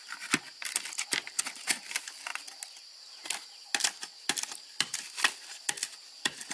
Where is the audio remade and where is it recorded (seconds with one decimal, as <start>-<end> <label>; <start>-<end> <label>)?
0.0-6.5 recorded